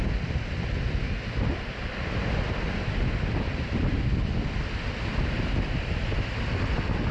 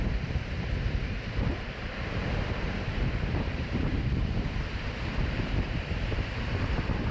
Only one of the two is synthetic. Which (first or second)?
second